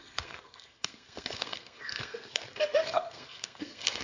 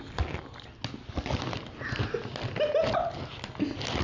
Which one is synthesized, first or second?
first